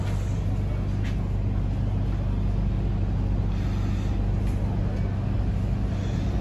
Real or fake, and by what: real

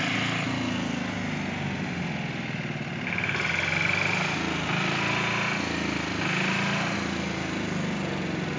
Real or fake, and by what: real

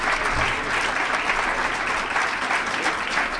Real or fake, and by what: fake, vocoder, BigVGAN v2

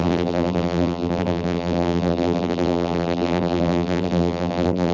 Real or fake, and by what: fake, vocoder, BigVGAN v2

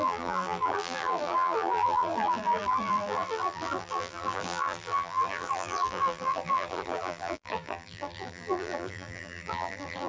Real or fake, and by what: fake, vocoder, BigVGAN v2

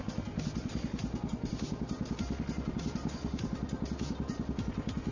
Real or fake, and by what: real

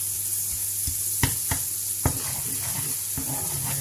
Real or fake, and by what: real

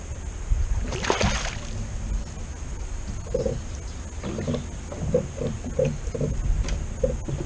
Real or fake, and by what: real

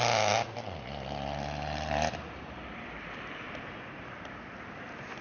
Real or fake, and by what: fake, vocoder, BigVGAN v2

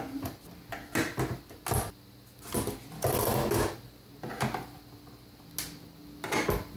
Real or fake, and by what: real